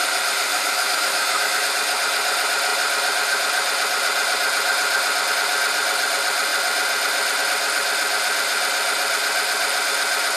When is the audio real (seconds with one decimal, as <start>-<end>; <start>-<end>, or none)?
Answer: 0.0-0.5; 1.6-10.4